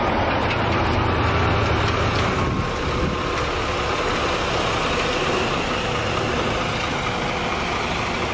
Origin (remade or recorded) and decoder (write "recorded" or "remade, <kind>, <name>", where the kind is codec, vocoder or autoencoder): recorded